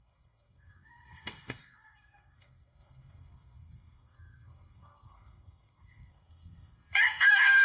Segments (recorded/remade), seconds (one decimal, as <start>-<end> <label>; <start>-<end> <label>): 0.0-7.6 remade